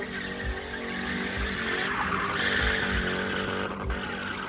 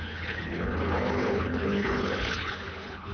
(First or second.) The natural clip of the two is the first